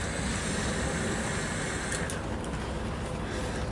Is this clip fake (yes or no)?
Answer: no